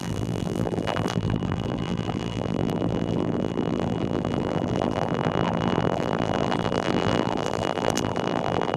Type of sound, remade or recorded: remade